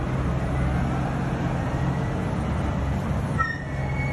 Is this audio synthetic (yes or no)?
no